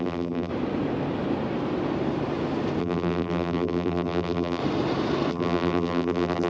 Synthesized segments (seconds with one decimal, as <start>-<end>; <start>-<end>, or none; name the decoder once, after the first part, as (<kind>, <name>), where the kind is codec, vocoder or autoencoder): 0.0-0.5 (vocoder, BigVGAN v2); 2.8-4.6; 5.3-6.5